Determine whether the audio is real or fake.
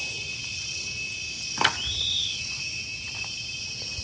real